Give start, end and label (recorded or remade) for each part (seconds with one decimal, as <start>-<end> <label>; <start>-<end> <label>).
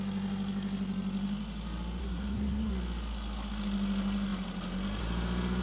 0.0-2.0 recorded; 2.0-2.7 remade; 2.7-5.6 recorded